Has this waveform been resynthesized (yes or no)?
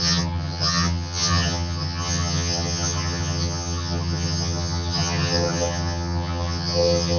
yes